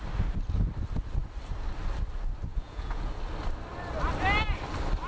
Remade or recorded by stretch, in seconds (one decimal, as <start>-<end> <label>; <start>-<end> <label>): 0.0-2.5 recorded; 2.5-3.1 remade; 3.1-5.1 recorded

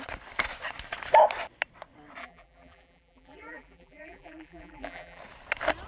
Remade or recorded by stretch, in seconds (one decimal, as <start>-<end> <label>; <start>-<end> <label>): 0.0-2.2 recorded; 2.2-5.2 remade; 5.2-5.9 recorded

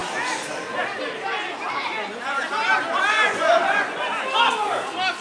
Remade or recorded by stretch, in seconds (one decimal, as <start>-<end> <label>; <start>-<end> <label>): 0.0-3.1 recorded; 3.1-4.1 remade; 4.1-5.2 recorded

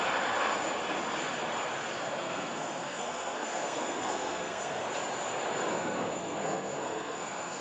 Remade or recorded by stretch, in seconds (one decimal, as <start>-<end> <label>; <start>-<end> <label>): 0.0-2.2 recorded; 2.2-4.8 remade; 4.8-5.7 recorded; 5.7-7.6 remade

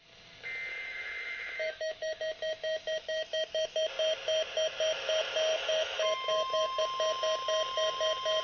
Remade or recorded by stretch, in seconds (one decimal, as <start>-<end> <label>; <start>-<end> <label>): 0.0-0.7 recorded; 0.7-2.2 remade; 2.2-5.5 recorded; 5.5-6.8 remade; 6.8-8.4 recorded

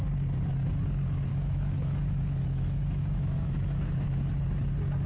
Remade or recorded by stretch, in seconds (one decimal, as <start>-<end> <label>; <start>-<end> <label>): 0.0-1.3 recorded; 1.3-4.4 remade; 4.4-5.1 recorded